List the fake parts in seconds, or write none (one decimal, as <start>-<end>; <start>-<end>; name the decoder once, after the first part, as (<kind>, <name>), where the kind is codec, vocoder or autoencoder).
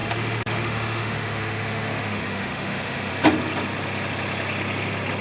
0.0-3.1 (autoencoder, DAC-VAE)